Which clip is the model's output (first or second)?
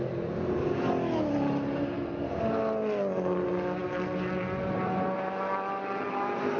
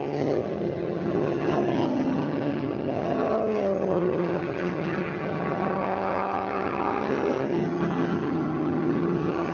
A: second